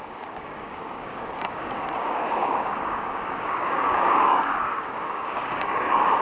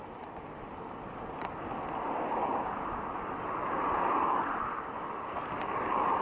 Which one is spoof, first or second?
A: first